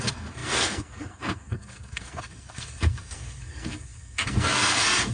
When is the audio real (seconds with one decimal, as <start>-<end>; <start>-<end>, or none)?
none